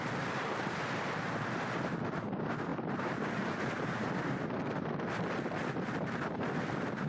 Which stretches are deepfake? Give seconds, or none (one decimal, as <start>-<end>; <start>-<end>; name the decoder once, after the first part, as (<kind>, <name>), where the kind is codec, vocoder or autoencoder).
none